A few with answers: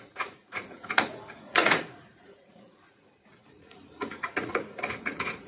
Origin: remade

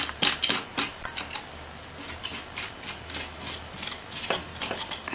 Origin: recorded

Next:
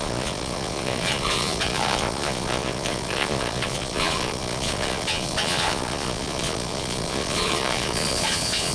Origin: remade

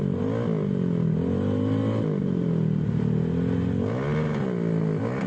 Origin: recorded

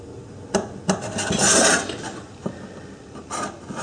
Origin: recorded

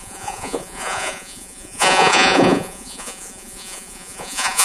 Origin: remade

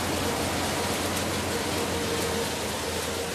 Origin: recorded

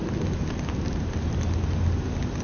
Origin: recorded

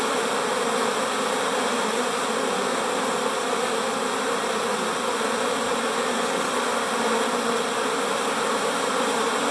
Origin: recorded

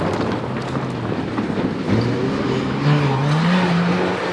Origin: recorded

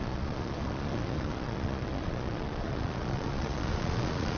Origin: remade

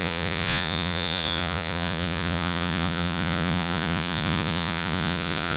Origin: remade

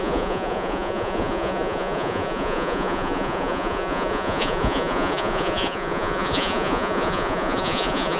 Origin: remade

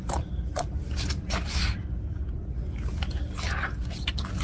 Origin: recorded